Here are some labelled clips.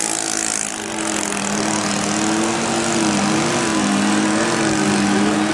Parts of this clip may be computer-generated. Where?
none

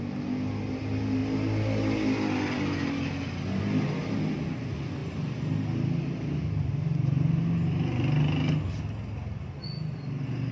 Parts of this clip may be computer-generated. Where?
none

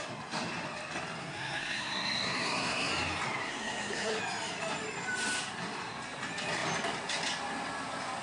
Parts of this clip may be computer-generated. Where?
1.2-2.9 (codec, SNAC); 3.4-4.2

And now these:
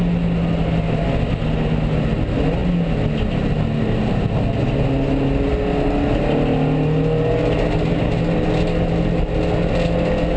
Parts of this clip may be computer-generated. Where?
none

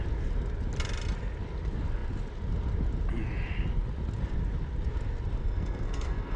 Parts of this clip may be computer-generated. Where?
5.4-6.4 (codec, SNAC)